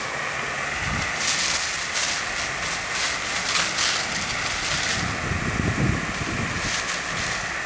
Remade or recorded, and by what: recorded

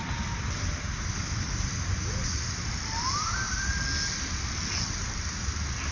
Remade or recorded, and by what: recorded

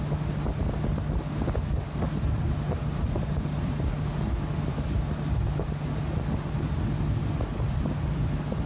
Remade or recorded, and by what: recorded